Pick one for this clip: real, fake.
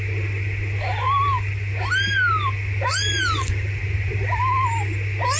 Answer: real